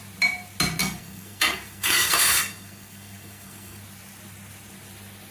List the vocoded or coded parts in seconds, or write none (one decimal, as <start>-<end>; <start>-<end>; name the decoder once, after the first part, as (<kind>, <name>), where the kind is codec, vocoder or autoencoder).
0.8-3.8 (codec, SNAC)